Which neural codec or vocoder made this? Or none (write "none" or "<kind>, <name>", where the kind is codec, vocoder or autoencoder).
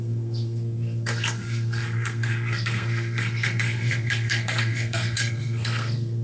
codec, SNAC